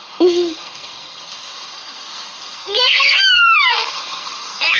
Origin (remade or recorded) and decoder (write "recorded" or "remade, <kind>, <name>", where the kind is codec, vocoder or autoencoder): remade, codec, SNAC